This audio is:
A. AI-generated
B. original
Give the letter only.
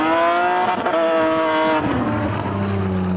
B